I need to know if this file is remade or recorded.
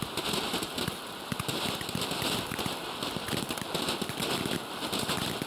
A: recorded